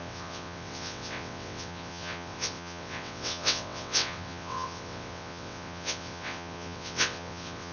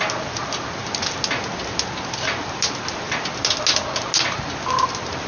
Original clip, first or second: second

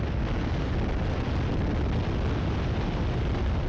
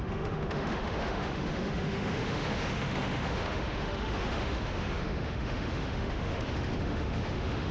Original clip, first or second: first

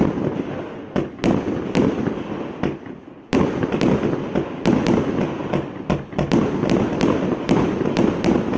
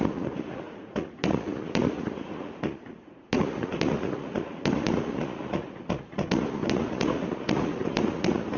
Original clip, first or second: first